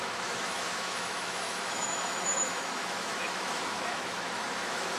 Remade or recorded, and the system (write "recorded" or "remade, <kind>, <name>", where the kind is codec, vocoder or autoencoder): remade, autoencoder, DAC-VAE